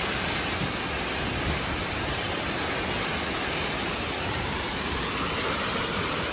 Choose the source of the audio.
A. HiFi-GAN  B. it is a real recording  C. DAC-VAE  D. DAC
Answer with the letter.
B